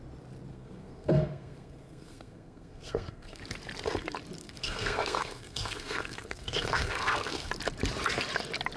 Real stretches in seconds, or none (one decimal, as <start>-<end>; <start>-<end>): 0.0-0.5; 3.4-4.4; 7.5-8.8